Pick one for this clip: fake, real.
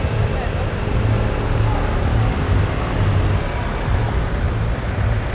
real